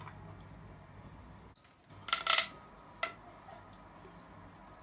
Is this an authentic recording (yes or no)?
yes